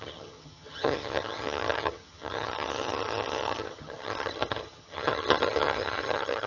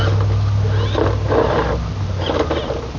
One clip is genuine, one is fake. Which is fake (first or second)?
first